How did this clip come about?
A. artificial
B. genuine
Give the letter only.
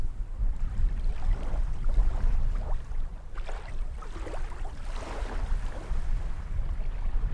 A